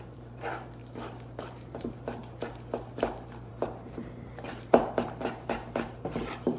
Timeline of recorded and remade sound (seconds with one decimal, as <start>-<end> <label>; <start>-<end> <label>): 0.0-0.8 remade; 0.8-1.4 recorded; 1.4-2.2 remade; 2.2-3.5 recorded; 3.5-6.6 remade